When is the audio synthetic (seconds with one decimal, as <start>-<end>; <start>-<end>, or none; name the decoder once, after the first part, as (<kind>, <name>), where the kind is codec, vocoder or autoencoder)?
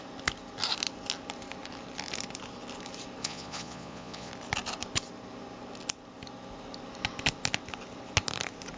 3.2-4.3 (vocoder, Vocos)